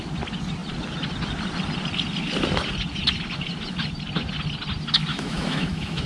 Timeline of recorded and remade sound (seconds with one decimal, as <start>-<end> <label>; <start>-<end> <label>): 0.0-5.1 recorded; 5.1-6.1 remade